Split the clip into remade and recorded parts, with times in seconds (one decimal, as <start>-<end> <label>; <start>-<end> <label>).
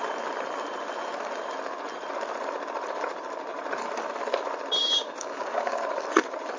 0.0-4.8 recorded; 4.8-5.8 remade; 5.8-6.6 recorded